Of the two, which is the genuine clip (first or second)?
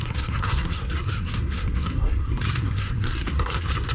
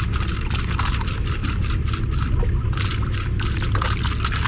second